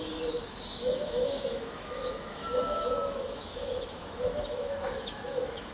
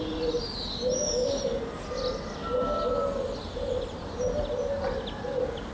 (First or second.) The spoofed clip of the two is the first